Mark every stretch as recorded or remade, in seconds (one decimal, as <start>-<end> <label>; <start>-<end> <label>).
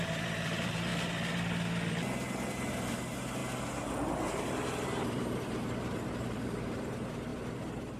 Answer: 0.0-0.9 remade; 0.9-2.7 recorded; 2.7-3.4 remade; 3.4-4.4 recorded; 4.4-7.3 remade; 7.3-8.0 recorded